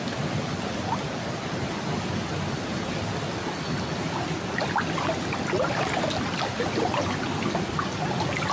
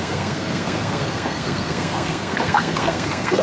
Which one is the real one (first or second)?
first